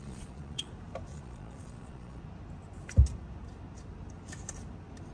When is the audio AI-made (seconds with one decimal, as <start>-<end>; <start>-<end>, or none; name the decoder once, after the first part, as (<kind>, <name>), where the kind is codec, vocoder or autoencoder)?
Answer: 0.0-0.7 (vocoder, Vocos); 1.1-2.2